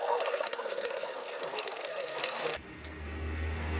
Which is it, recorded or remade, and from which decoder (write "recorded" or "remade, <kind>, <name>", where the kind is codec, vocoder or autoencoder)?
remade, codec, SNAC